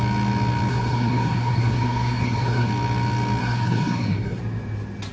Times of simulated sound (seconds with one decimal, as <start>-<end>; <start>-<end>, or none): 0.7-2.7; 3.4-4.4